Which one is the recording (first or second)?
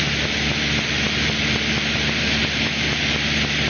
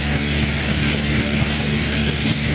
first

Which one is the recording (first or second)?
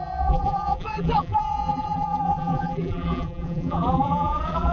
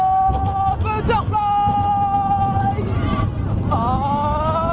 second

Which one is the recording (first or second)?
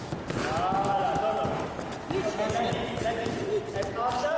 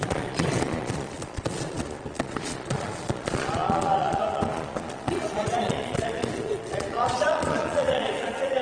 first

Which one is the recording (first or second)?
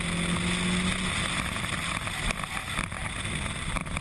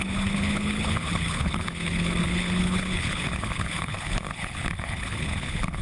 first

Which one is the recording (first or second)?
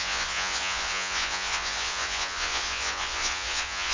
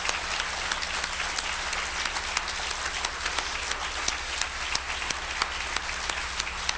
second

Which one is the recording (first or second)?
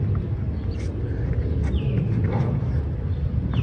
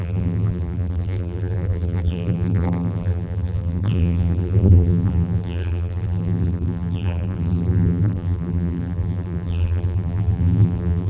first